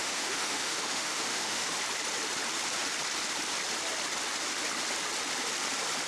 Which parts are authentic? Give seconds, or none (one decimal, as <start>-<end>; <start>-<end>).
1.7-6.1